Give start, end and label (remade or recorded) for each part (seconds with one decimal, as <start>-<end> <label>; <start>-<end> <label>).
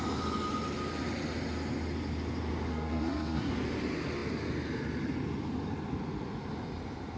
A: 0.0-2.7 recorded; 2.7-3.5 remade; 3.5-7.2 recorded